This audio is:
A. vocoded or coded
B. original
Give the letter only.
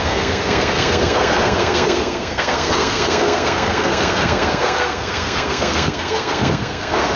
A